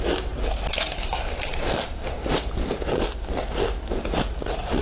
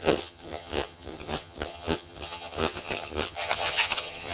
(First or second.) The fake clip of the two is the second